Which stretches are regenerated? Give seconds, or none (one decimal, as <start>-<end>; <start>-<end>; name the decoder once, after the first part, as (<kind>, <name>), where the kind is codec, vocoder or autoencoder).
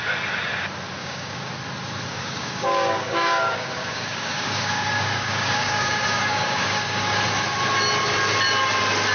1.0-1.5 (codec, DAC); 2.1-7.2